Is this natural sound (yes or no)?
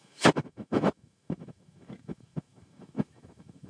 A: no